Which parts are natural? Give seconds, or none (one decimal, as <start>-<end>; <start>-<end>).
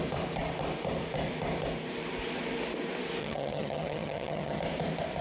0.0-3.2; 4.6-5.2